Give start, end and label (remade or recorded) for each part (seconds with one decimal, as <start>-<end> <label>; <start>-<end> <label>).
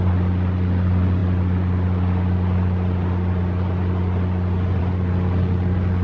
0.0-6.0 recorded